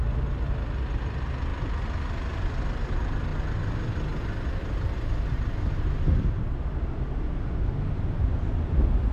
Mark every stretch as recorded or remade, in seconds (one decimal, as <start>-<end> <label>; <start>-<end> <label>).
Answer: 0.0-9.1 recorded